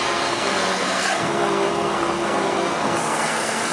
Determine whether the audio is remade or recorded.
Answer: remade